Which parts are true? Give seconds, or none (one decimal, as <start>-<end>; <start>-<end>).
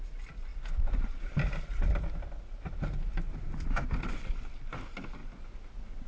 0.0-6.1